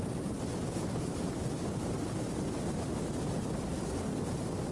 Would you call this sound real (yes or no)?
yes